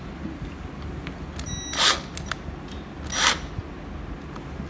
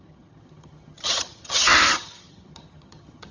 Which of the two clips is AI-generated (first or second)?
second